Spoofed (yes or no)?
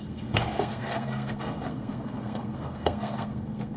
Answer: yes